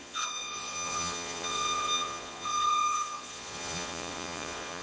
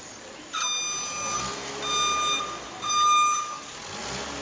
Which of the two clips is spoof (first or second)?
first